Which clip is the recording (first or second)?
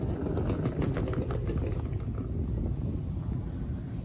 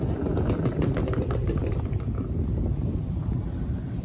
first